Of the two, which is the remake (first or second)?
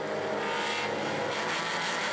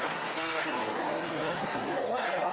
second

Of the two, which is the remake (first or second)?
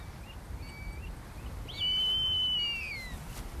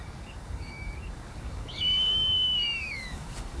second